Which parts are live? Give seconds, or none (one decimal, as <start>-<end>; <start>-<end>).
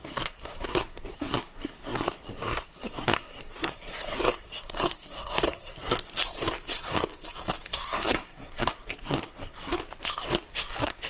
6.2-7.7; 9.8-10.5